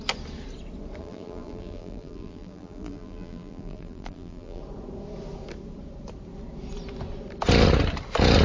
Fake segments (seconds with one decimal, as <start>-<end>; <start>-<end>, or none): 1.0-4.6